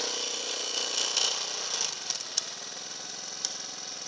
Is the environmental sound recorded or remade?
recorded